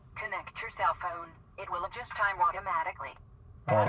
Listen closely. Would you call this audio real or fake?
fake